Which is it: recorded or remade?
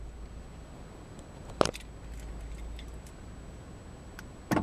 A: recorded